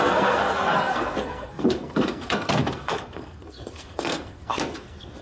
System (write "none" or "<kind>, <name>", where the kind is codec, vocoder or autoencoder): codec, SNAC